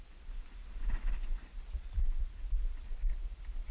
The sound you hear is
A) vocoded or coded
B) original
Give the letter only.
A